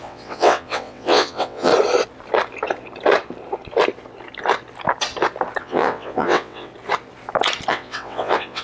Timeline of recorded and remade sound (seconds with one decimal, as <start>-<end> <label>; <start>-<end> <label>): 0.0-1.7 remade; 1.7-5.6 recorded; 5.6-6.7 remade; 6.7-7.7 recorded; 7.7-8.6 remade